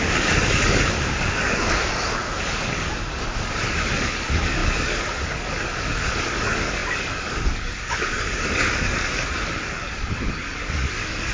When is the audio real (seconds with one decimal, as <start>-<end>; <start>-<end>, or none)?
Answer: none